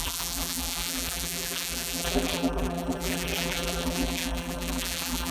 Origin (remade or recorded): remade